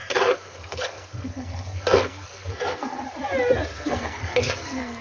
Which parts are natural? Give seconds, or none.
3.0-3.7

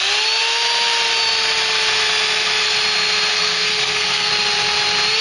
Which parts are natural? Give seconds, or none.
0.0-3.3; 4.3-5.2

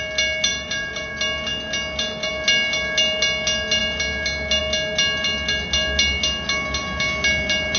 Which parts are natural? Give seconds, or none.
0.0-0.5; 1.1-7.8

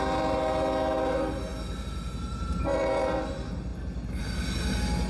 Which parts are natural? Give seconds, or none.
0.0-5.1

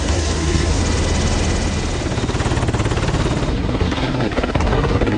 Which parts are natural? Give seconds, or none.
0.8-3.5